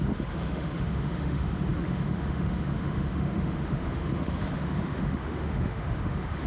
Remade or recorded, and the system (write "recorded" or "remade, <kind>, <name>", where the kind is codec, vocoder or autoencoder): remade, autoencoder, DAC-VAE